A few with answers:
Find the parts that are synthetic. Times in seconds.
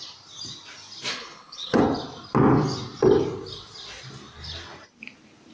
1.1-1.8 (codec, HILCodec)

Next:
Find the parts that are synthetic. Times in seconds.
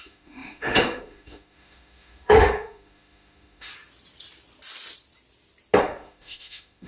0.0-3.7 (autoencoder, DAC-VAE); 5.8-6.9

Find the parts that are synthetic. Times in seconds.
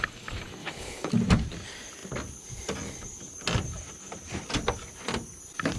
0.6-1.1 (codec, HILCodec)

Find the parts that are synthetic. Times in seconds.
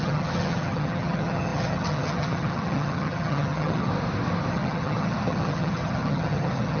0.0-3.9 (vocoder, HiFi-GAN); 4.5-6.8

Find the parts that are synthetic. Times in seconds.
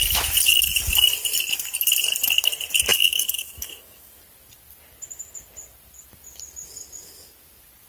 2.9-4.2 (autoencoder, DAC-VAE)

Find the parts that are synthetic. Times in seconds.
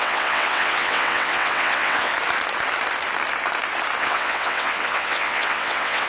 0.0-2.1 (vocoder, WaveNeXt); 4.0-6.1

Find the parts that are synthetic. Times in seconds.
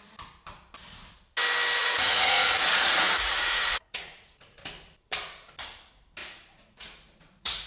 1.8-4.7 (vocoder, Vocos); 6.2-7.7